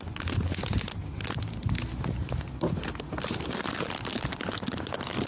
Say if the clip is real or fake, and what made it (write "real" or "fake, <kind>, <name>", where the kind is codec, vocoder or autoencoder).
real